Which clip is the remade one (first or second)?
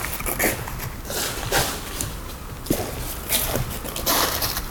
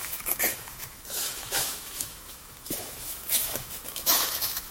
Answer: second